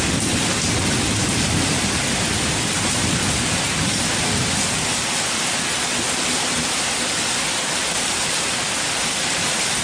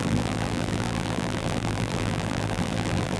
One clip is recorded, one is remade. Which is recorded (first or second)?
first